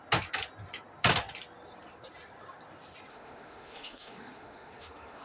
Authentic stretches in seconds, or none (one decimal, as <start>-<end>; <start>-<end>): 0.0-3.1